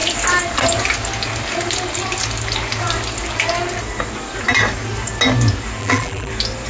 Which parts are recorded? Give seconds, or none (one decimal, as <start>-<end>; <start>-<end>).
0.0-5.8; 6.3-6.7